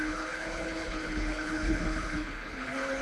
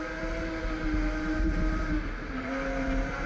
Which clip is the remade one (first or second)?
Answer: first